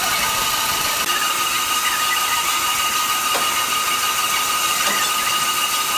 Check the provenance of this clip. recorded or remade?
recorded